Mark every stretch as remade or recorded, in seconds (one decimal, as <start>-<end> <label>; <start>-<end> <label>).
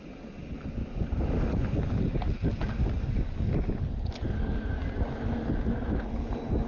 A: 0.0-6.7 recorded